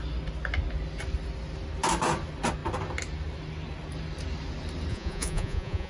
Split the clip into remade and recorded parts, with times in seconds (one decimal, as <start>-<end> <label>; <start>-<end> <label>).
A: 0.0-4.9 recorded; 4.9-5.9 remade